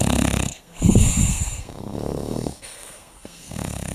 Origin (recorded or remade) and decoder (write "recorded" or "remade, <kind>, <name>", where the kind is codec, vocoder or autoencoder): remade, codec, SNAC